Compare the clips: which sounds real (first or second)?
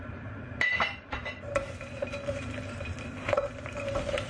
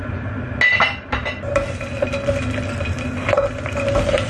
second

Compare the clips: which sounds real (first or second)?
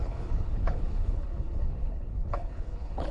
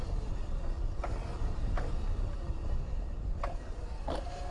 second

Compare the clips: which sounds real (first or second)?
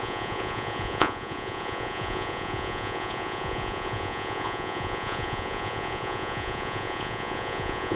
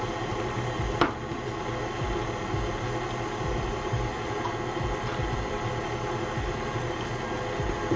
second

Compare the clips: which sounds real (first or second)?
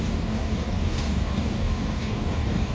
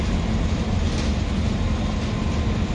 second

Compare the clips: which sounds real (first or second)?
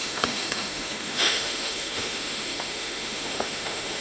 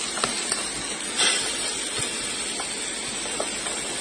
second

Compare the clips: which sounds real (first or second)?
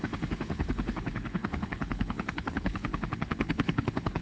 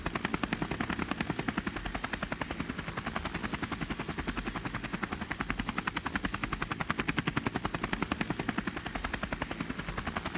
second